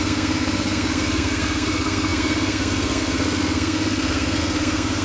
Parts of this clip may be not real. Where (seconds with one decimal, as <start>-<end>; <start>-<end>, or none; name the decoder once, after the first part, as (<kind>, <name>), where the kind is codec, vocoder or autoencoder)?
0.0-5.0 (codec, SNAC)